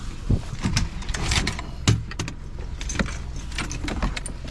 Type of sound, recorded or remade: recorded